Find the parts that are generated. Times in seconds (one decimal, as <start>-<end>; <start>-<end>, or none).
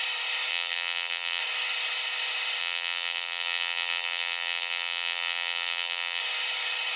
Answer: 0.5-1.4; 2.6-6.2